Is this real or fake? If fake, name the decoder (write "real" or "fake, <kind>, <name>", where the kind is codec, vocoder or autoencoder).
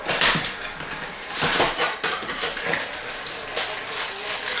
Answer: real